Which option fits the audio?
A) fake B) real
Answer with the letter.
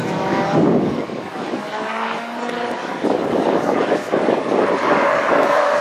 A